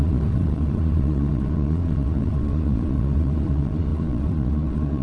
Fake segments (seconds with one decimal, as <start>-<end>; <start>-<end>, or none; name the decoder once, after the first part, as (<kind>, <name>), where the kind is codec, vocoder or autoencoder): 0.0-5.0 (vocoder, Vocos)